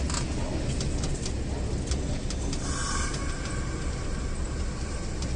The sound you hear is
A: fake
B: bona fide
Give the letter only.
B